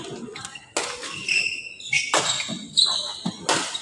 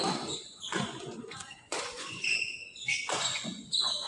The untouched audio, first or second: first